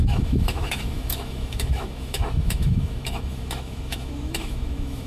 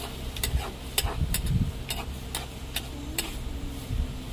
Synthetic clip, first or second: first